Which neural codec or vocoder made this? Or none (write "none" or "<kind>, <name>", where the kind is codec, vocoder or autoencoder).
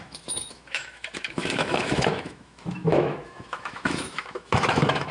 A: autoencoder, DAC-VAE